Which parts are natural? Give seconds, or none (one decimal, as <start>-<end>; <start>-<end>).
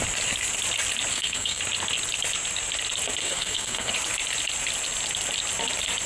0.0-1.1; 1.6-3.2; 3.9-6.1